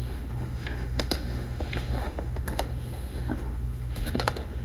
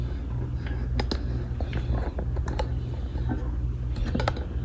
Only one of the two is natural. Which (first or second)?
second